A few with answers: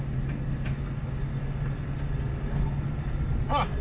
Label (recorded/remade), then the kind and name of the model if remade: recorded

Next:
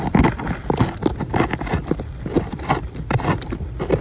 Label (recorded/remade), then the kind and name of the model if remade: recorded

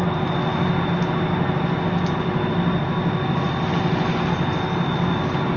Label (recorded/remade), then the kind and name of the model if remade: recorded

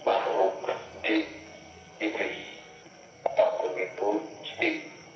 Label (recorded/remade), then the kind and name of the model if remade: remade, codec, SNAC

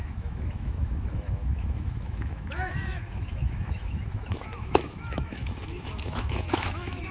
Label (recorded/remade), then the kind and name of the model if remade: remade, autoencoder, DAC-VAE